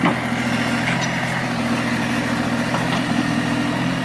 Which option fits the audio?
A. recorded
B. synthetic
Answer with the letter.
A